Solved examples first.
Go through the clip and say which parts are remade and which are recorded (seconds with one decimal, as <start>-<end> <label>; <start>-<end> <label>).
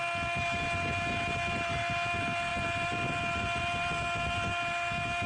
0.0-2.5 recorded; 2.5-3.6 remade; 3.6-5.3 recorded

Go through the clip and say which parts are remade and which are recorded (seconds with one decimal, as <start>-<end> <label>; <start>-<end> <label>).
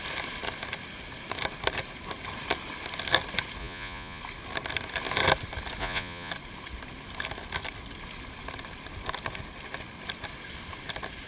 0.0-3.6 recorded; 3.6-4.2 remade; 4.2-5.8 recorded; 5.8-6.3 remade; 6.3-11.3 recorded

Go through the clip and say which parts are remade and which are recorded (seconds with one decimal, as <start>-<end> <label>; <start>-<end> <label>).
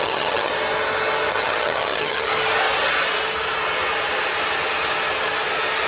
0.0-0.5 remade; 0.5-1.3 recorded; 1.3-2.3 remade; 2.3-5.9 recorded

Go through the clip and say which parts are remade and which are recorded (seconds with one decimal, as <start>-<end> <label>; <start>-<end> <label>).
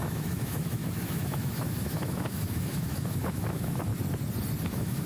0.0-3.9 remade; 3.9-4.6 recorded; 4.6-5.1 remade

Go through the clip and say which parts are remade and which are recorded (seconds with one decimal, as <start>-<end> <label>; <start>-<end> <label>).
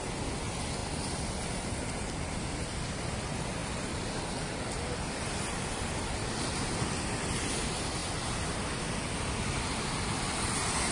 0.0-10.9 recorded